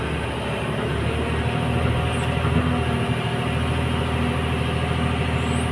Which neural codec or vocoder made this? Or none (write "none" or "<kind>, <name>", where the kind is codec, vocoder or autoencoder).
none